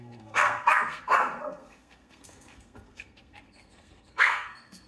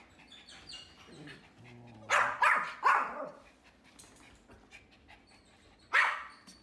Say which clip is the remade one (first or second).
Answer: first